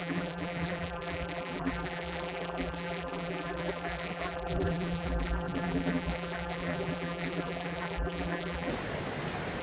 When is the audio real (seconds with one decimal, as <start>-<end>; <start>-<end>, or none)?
8.7-9.6